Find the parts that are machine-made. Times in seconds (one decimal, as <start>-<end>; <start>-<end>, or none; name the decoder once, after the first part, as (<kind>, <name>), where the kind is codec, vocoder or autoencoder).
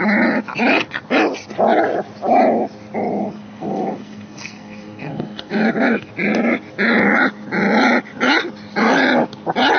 3.2-6.1 (codec, SNAC)